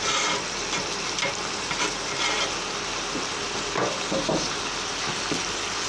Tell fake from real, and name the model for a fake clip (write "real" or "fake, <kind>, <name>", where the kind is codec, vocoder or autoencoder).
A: real